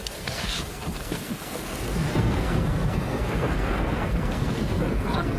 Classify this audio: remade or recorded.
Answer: remade